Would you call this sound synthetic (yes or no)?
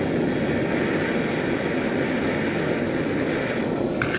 no